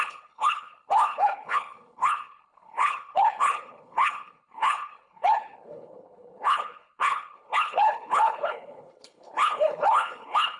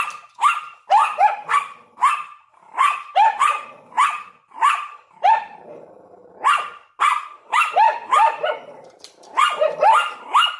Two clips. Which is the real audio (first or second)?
second